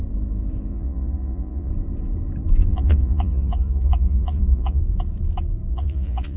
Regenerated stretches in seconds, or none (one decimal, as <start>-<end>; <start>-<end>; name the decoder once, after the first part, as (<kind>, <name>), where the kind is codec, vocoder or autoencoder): 0.7-1.7 (vocoder, Vocos); 2.7-4.8; 5.7-6.4